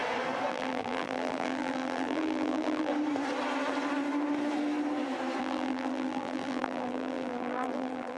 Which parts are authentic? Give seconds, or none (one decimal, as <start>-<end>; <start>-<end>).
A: 0.0-0.5; 2.9-5.4

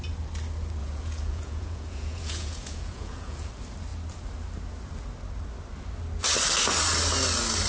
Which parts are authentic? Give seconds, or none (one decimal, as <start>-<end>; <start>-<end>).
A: 0.0-0.8; 3.5-7.7

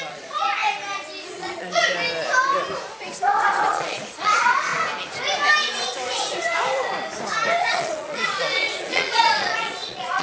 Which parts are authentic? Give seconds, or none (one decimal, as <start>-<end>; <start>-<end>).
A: 0.6-1.3; 1.8-3.7; 4.7-7.6

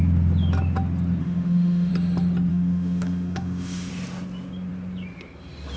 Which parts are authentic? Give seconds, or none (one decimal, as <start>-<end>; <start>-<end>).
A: 0.0-1.2; 1.9-2.5; 3.9-5.8

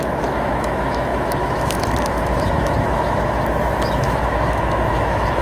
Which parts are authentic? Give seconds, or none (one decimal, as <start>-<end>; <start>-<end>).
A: none